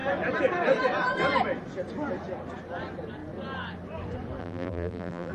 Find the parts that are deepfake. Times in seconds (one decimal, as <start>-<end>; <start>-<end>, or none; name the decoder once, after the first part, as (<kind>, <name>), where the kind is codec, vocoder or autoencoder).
4.4-5.3 (vocoder, BigVGAN v2)